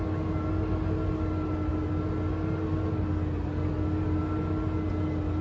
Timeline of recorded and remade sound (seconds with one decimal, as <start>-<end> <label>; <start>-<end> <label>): 0.0-5.4 recorded